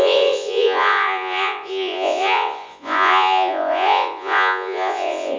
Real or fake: fake